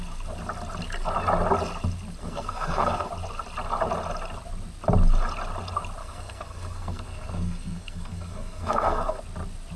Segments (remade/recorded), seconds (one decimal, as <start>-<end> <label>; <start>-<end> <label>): 0.0-2.2 recorded; 2.2-3.1 remade; 3.1-6.0 recorded; 6.0-9.2 remade; 9.2-9.8 recorded